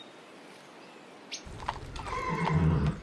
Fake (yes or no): no